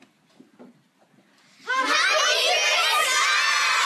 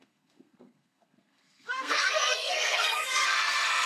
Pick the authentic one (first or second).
first